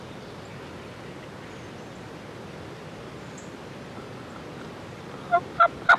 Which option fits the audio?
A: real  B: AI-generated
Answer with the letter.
A